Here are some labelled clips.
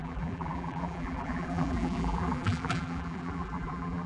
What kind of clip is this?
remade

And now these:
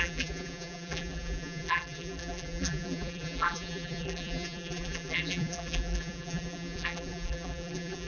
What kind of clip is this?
remade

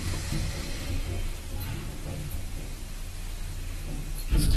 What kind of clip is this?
recorded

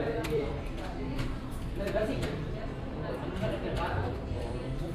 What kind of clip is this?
remade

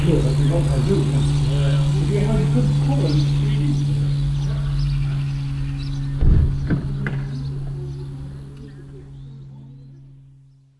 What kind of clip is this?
recorded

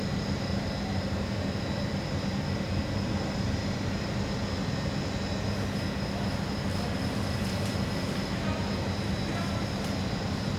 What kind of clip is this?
recorded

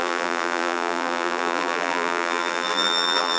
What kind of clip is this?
remade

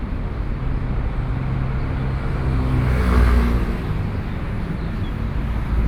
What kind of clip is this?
recorded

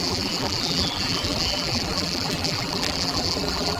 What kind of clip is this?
remade